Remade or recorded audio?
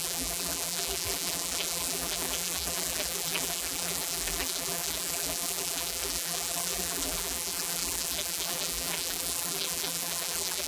remade